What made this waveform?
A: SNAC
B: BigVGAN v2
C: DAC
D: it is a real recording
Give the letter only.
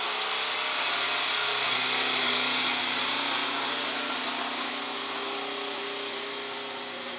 D